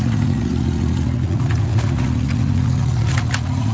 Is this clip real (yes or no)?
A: no